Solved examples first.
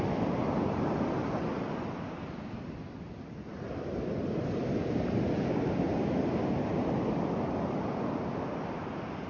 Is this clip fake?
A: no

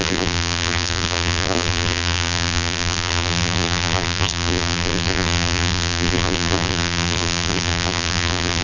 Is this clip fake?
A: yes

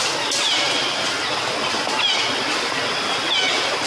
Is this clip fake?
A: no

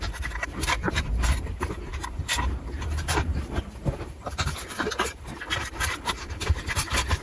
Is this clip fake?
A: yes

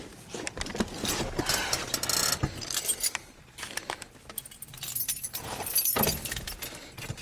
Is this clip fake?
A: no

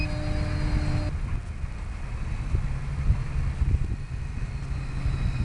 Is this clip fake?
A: no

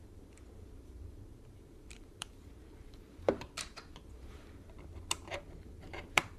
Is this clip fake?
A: yes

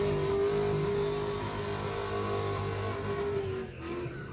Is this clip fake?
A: no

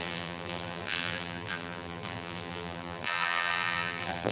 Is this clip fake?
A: yes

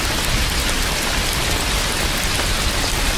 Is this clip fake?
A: no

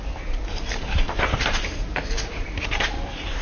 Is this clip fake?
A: yes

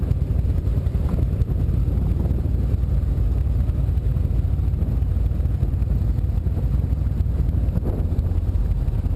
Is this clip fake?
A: yes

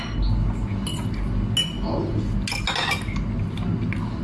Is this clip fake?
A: no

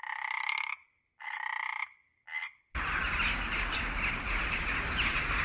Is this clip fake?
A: no